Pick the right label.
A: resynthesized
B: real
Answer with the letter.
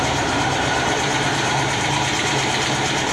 A